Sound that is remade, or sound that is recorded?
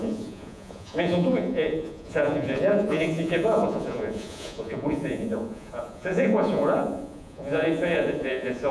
remade